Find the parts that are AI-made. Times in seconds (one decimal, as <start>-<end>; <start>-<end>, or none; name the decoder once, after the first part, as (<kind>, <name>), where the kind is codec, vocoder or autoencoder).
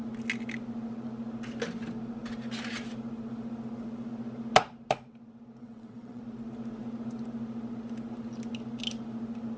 5.6-6.2 (vocoder, WaveNeXt)